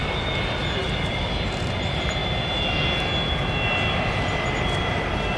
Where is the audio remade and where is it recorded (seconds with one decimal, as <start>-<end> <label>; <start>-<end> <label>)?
0.0-0.8 recorded; 0.8-2.2 remade; 2.2-4.9 recorded; 4.9-5.4 remade